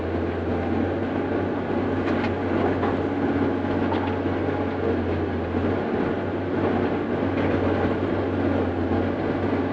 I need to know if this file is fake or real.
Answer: real